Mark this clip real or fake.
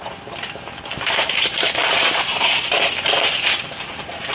fake